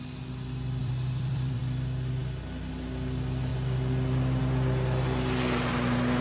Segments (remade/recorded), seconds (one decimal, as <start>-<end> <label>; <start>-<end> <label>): 0.0-0.8 recorded; 0.8-1.6 remade; 1.6-6.2 recorded

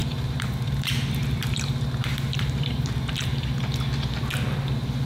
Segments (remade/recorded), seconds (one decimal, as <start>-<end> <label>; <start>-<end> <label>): 0.0-3.1 remade; 3.1-5.1 recorded

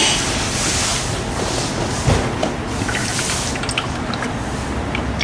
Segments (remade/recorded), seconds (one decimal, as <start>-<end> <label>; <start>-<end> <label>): 0.0-3.0 recorded; 3.0-3.5 remade; 3.5-5.2 recorded